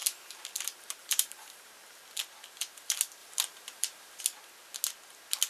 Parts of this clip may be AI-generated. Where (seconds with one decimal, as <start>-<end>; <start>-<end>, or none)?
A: 0.0-1.7; 3.2-4.2